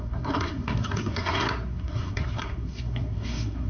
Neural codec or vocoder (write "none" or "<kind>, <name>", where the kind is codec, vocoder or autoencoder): codec, SNAC